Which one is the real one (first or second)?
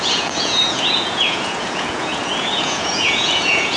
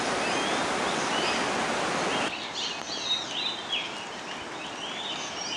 second